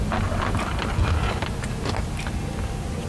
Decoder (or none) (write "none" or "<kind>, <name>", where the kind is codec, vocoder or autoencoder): none